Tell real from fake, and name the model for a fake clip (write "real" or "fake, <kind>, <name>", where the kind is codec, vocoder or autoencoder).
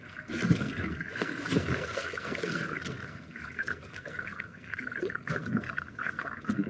fake, codec, SNAC